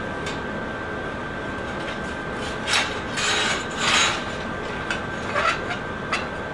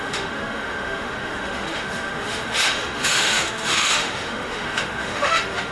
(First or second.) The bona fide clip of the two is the first